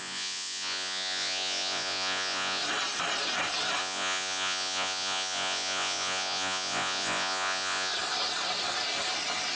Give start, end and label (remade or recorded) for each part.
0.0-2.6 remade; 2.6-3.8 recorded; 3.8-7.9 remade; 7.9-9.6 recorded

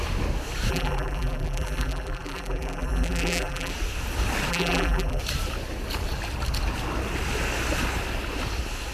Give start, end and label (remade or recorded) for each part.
0.0-0.7 recorded; 0.7-3.7 remade; 3.7-4.5 recorded; 4.5-5.2 remade; 5.2-8.9 recorded

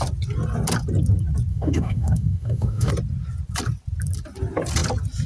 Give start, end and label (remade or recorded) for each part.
0.0-1.5 recorded; 1.5-2.9 remade; 2.9-5.3 recorded